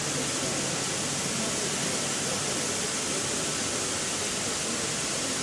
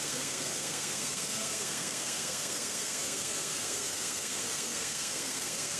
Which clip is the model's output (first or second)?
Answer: second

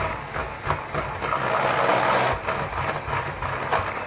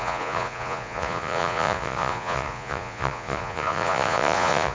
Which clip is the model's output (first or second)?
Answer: second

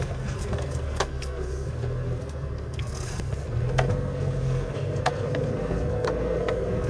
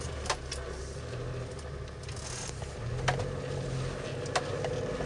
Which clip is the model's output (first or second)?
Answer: first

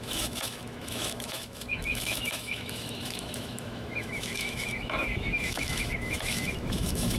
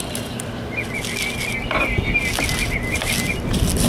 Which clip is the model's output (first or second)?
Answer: first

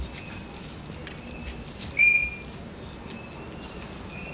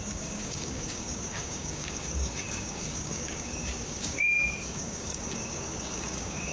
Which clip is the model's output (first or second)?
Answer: second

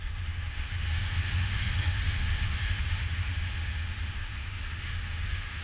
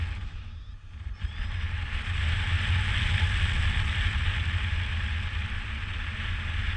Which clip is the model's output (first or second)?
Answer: first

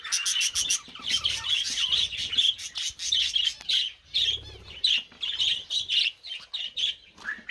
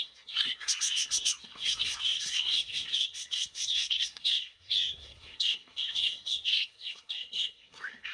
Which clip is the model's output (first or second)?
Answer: second